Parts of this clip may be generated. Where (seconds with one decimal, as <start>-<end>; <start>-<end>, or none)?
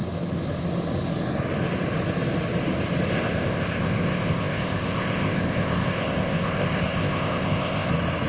3.1-7.9